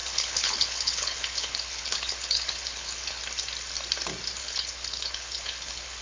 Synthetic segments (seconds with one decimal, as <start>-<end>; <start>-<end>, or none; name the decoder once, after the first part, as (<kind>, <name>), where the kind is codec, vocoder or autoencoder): 0.0-3.2 (codec, HILCodec); 4.4-6.0